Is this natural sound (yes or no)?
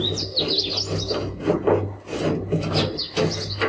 yes